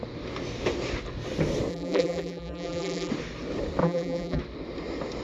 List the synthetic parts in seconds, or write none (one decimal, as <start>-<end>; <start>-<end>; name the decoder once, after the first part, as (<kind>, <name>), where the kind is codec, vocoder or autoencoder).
1.7-3.1 (vocoder, BigVGAN v2); 3.8-4.4